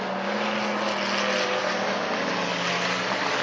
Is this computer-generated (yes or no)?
no